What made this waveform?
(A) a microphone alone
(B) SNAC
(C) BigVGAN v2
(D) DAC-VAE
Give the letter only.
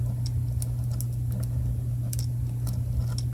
A